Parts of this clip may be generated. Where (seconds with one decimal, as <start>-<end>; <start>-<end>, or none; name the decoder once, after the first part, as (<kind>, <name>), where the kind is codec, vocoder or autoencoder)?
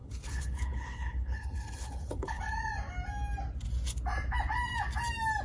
0.0-2.4 (codec, HILCodec)